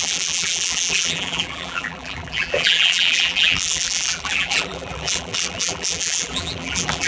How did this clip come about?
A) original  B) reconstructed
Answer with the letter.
B